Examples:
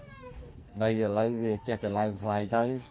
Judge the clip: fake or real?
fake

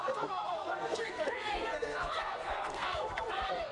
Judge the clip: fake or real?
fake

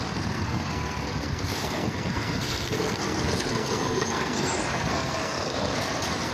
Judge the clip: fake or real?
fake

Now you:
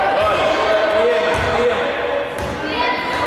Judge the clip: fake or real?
real